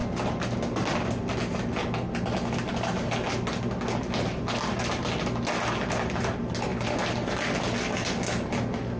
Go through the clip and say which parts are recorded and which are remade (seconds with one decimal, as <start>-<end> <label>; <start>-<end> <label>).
0.0-9.0 recorded